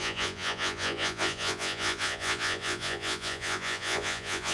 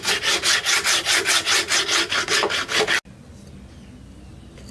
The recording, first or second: second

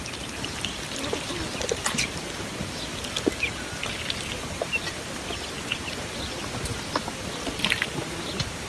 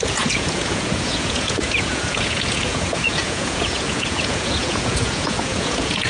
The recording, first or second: first